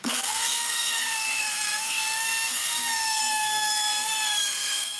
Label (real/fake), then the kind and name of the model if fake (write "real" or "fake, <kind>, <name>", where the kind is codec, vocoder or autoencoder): fake, codec, SNAC